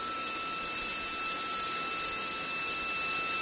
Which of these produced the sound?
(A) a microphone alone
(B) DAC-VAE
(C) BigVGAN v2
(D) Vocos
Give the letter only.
A